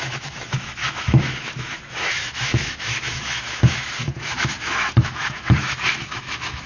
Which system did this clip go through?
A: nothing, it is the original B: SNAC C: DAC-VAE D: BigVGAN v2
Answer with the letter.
C